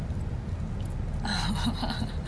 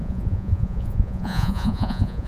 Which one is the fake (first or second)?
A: second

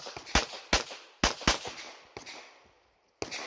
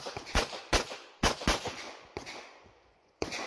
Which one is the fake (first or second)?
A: second